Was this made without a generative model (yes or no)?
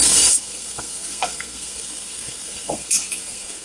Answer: no